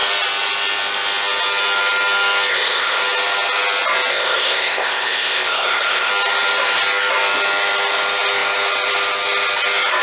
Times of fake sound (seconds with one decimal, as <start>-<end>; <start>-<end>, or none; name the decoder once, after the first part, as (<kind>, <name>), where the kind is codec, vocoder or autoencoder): 2.5-3.0 (codec, ZipCodec); 4.1-6.1

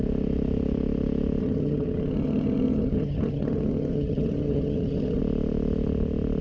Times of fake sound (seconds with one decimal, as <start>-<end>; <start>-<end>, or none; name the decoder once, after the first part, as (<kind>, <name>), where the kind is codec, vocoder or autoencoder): 1.4-5.2 (vocoder, HiFi-GAN)

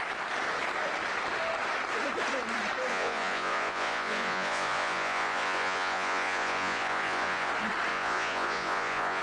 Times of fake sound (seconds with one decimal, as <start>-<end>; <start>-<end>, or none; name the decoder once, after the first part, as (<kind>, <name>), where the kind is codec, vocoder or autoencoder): 2.9-7.5 (vocoder, Vocos); 7.9-9.2

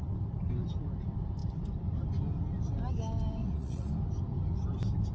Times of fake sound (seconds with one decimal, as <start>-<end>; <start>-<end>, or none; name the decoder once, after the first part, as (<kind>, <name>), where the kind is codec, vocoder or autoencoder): 3.4-3.9 (vocoder, Vocos)

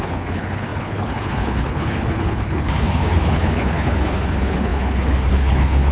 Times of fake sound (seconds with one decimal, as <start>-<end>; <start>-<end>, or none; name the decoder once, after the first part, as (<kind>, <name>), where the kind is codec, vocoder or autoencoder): 0.0-5.9 (codec, HILCodec)

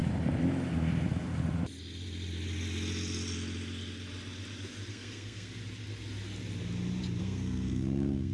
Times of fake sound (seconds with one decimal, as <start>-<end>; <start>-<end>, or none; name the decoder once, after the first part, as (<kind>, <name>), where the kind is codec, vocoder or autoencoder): 4.9-5.6 (codec, SNAC); 7.2-8.3